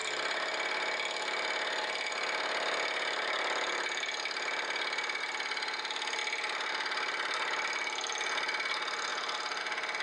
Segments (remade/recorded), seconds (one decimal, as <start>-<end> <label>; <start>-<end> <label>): 0.0-6.2 recorded; 6.2-6.7 remade; 6.7-9.1 recorded; 9.1-9.6 remade; 9.6-10.0 recorded